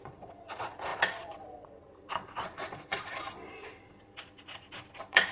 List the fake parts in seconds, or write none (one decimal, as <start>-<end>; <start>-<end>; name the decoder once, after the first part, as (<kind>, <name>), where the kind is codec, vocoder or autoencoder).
0.0-5.3 (vocoder, Vocos)